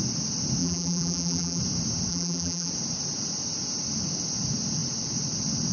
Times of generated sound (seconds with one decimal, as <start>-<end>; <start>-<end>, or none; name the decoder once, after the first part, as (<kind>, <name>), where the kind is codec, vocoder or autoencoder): 0.6-1.6 (vocoder, BigVGAN v2); 2.1-2.7